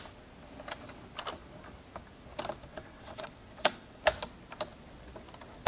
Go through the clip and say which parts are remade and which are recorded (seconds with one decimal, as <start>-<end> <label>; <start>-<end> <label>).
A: 0.0-2.7 recorded; 2.7-4.0 remade; 4.0-5.7 recorded